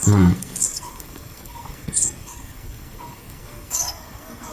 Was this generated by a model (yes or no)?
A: yes